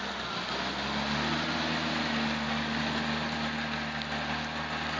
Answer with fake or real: real